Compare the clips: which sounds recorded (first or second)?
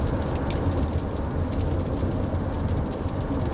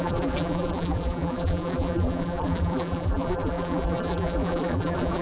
first